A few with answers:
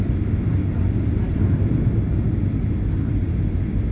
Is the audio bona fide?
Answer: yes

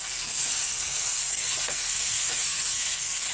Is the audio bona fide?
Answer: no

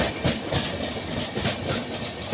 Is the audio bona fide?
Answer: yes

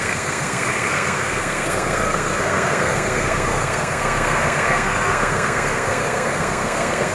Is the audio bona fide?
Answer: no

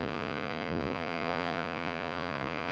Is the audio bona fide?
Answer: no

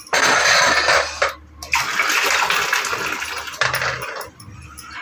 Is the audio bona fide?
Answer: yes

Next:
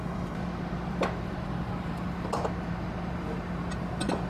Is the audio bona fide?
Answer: yes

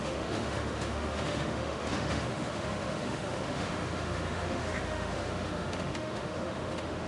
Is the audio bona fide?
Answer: no